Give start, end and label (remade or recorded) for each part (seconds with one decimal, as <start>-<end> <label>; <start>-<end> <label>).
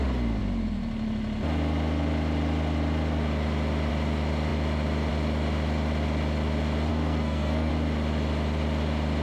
0.0-6.9 recorded; 6.9-7.7 remade; 7.7-9.2 recorded